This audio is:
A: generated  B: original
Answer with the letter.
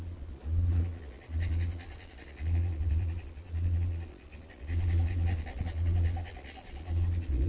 A